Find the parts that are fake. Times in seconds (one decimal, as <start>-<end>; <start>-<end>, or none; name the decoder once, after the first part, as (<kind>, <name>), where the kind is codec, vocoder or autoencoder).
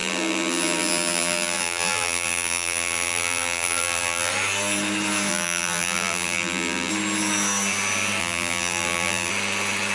0.0-4.3 (vocoder, BigVGAN v2); 5.3-6.9; 8.2-9.3